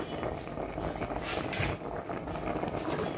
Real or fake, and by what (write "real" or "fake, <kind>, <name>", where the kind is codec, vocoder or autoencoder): real